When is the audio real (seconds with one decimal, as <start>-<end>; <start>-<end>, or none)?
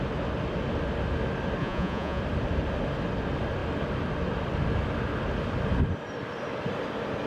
0.0-1.6; 2.2-7.3